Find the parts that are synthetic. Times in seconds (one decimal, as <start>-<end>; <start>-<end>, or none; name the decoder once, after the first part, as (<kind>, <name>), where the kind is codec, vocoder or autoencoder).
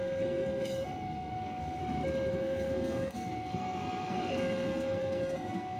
0.0-1.8 (codec, SNAC); 2.3-5.8